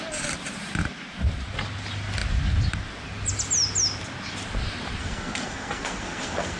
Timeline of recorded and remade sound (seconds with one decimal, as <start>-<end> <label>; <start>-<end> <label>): 0.0-5.0 recorded; 5.0-6.6 remade